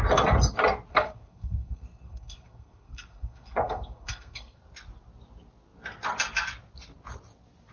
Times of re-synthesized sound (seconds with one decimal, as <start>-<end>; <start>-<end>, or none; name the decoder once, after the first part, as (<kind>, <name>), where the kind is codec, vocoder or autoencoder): 0.9-4.6 (codec, SNAC)